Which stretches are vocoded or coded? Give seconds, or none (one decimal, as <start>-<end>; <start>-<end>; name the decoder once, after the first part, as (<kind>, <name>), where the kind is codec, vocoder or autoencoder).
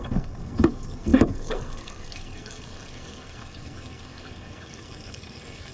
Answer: 0.0-5.7 (codec, SNAC)